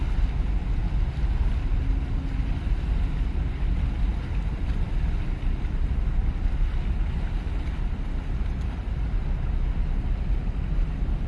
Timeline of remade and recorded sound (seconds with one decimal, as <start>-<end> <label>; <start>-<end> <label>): 0.0-4.1 recorded; 4.1-9.0 remade; 9.0-11.3 recorded